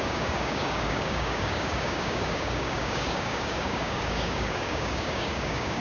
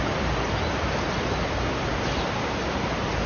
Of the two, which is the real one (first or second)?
second